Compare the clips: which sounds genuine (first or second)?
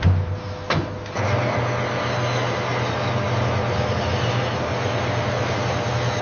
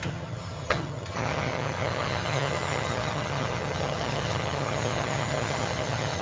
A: first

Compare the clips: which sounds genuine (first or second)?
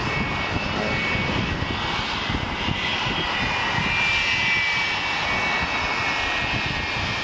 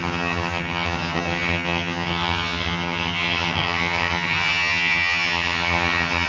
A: first